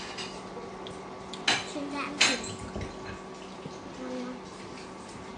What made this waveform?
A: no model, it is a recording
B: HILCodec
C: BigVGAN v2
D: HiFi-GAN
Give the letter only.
A